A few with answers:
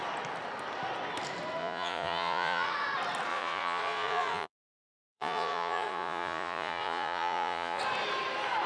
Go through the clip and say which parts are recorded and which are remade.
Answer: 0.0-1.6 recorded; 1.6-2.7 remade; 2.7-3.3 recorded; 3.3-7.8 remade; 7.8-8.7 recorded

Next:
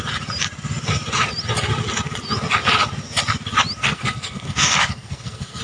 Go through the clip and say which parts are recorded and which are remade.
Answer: 0.0-3.8 recorded; 3.8-5.6 remade

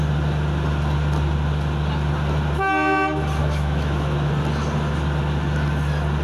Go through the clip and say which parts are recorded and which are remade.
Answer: 0.0-3.4 recorded; 3.4-4.3 remade; 4.3-6.2 recorded

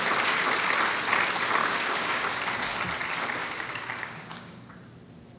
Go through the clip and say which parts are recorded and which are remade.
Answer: 0.0-1.6 recorded; 1.6-2.8 remade; 2.8-3.4 recorded; 3.4-4.7 remade; 4.7-5.4 recorded

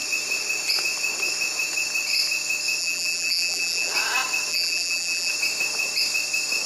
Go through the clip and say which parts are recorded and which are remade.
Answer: 0.0-2.8 recorded; 2.8-3.9 remade; 3.9-4.5 recorded; 4.5-5.3 remade; 5.3-6.7 recorded

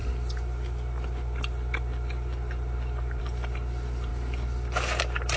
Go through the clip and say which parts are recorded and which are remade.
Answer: 0.0-5.4 recorded

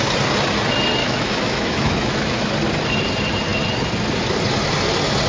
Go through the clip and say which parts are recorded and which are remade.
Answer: 0.0-1.0 recorded; 1.0-2.5 remade; 2.5-5.3 recorded